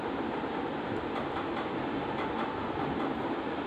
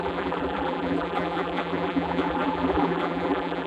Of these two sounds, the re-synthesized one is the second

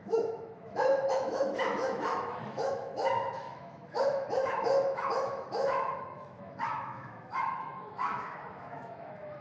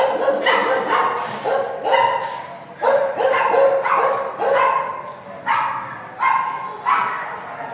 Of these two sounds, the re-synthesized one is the first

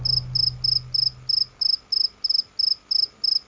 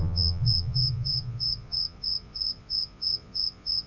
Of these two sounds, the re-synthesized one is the second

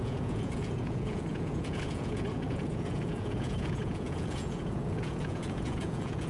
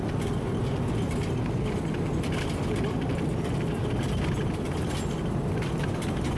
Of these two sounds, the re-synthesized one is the first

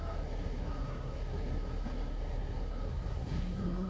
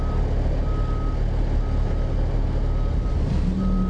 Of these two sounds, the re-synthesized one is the first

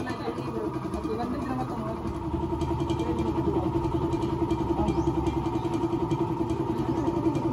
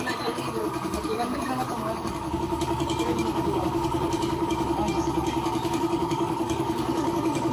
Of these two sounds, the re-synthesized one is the second